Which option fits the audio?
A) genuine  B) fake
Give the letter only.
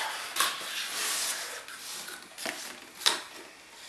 A